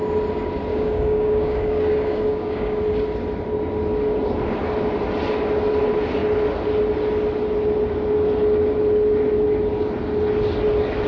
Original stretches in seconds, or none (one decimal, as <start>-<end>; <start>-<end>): 0.0-0.7; 2.8-11.1